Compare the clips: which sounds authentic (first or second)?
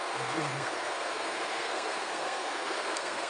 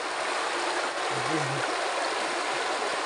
second